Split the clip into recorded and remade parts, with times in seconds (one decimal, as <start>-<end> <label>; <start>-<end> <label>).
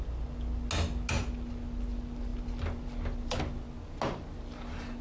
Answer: 0.0-5.0 recorded